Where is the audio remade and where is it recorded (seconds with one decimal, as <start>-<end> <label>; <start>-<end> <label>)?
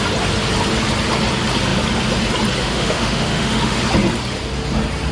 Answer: 0.0-2.6 recorded; 2.6-3.8 remade; 3.8-5.1 recorded